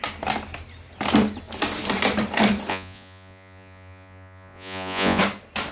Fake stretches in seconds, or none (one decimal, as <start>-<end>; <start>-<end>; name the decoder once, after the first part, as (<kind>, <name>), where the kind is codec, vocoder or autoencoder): 2.7-5.2 (vocoder, Vocos)